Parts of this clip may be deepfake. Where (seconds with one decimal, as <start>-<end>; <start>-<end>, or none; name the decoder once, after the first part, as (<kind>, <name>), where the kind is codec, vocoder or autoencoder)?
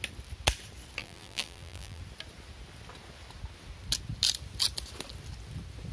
1.0-2.0 (vocoder, BigVGAN v2)